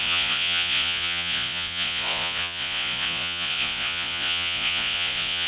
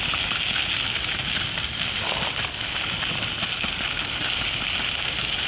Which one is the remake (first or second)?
first